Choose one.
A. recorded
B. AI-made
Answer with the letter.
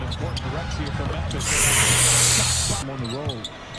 A